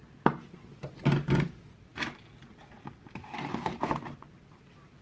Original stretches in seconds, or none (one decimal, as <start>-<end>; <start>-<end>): 0.0-5.0